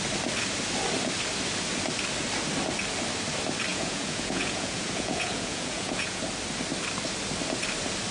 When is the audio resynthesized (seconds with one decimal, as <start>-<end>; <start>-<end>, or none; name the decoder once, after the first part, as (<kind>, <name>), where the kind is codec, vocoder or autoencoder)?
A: 3.7-6.2 (vocoder, Vocos)